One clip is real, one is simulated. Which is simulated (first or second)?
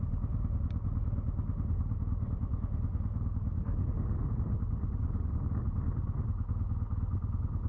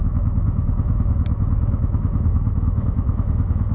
second